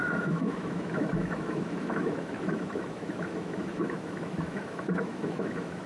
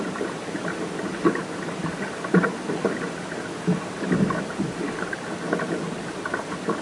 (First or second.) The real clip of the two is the second